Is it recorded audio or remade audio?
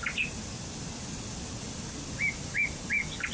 recorded